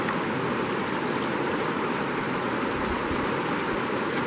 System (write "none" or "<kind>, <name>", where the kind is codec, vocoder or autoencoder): none